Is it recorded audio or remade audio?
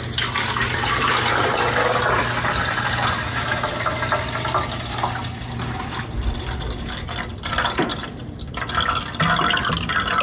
recorded